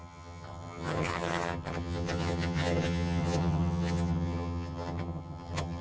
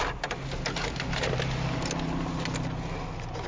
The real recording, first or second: second